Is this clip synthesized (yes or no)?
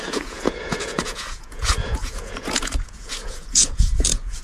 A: yes